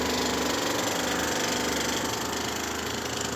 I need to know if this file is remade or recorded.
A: recorded